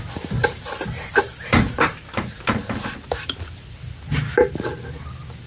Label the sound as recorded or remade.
recorded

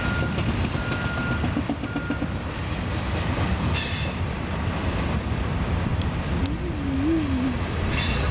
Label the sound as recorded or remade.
recorded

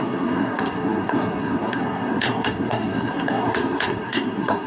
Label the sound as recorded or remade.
remade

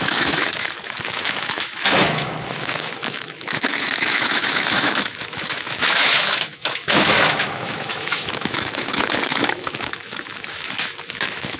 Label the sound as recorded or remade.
remade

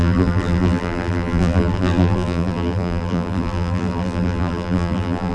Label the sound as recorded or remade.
remade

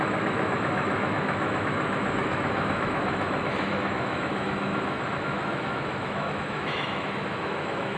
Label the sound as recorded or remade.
remade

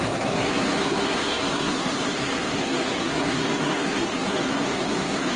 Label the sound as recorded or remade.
remade